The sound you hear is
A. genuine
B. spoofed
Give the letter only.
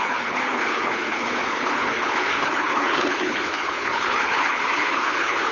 B